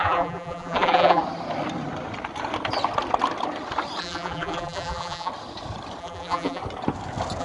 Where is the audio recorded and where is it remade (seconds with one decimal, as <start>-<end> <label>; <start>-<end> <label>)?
0.0-1.2 remade; 1.2-4.0 recorded; 4.0-5.3 remade; 5.3-6.0 recorded; 6.0-6.6 remade; 6.6-7.4 recorded